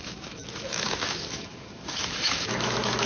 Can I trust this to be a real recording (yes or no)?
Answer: no